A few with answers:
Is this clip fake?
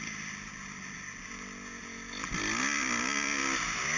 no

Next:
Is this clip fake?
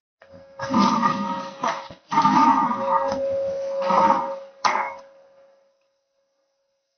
yes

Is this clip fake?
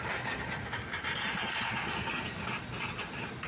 no